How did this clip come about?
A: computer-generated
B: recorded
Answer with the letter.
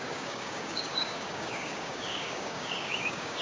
A